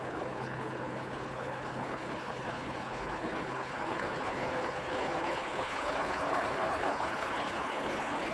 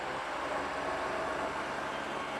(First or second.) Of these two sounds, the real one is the second